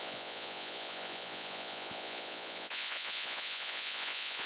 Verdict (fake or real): fake